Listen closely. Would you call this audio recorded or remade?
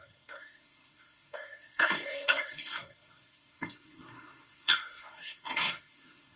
remade